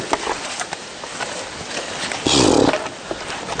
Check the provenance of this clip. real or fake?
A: real